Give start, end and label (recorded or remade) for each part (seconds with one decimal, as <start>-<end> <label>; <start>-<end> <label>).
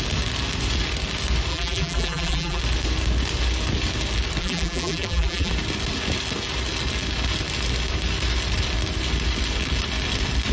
0.0-1.5 recorded; 1.5-2.6 remade; 2.6-4.4 recorded; 4.4-5.5 remade; 5.5-10.5 recorded